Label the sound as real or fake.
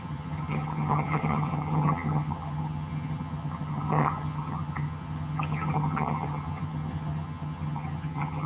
fake